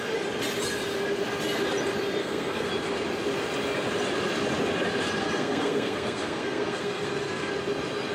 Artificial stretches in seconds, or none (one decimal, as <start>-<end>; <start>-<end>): 2.2-2.7; 5.2-7.5